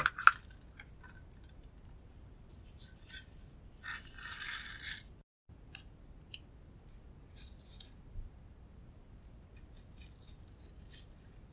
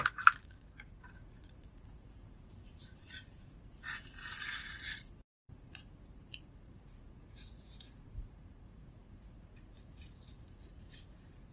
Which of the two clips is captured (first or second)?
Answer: first